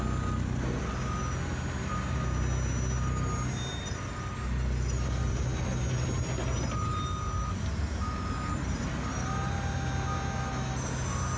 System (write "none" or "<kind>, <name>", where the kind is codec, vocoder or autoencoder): none